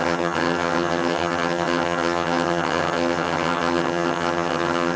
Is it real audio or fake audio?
fake